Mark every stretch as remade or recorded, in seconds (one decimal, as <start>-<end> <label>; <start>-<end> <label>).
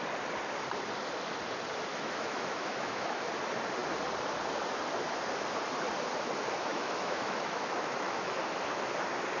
0.0-1.9 recorded; 1.9-3.3 remade; 3.3-6.7 recorded; 6.7-8.4 remade; 8.4-9.4 recorded